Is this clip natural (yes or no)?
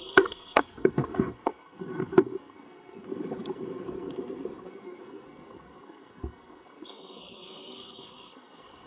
no